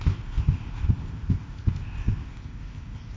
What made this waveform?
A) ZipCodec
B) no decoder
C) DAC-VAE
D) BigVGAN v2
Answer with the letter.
A